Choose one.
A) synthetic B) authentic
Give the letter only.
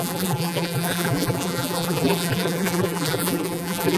A